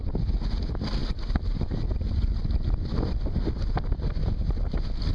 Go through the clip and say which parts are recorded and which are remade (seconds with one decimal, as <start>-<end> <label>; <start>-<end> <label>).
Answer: 0.0-5.1 recorded